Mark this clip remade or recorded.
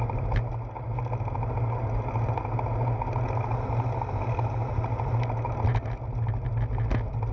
recorded